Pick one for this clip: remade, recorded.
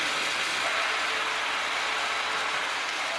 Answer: recorded